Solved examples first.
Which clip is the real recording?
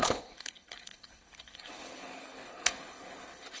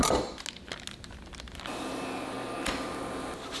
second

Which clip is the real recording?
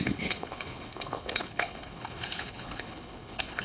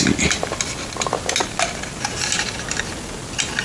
second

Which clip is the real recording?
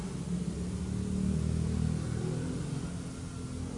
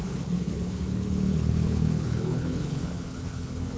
first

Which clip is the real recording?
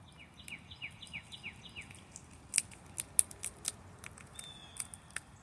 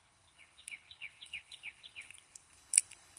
first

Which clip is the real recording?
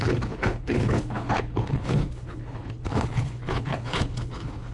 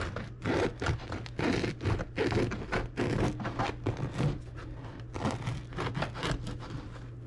second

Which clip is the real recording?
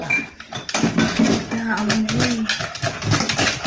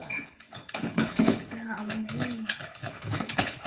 first